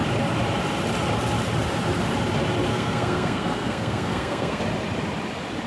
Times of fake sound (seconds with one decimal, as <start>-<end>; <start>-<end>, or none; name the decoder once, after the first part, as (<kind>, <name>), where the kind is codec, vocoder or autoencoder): 2.7-4.6 (codec, SNAC)